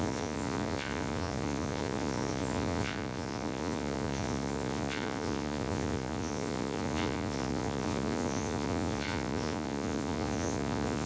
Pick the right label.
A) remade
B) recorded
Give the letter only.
A